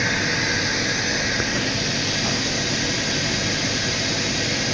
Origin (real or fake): real